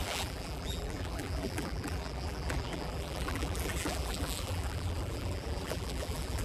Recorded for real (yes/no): no